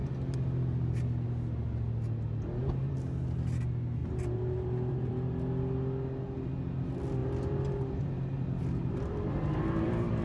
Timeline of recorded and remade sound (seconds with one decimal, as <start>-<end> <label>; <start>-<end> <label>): 0.0-4.0 recorded; 4.0-5.1 remade; 5.1-7.2 recorded; 7.2-10.2 remade